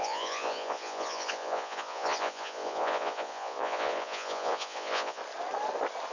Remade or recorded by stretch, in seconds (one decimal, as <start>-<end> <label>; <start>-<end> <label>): 0.0-5.2 remade; 5.2-6.1 recorded